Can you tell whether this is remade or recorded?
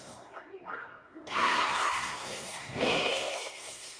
remade